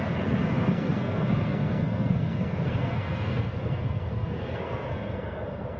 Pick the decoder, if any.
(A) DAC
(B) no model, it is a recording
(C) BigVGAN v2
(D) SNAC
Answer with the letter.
D